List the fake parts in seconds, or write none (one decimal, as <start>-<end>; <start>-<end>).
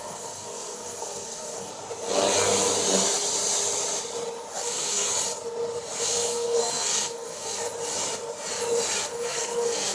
0.0-1.7; 4.5-5.1; 6.0-7.6; 9.0-9.9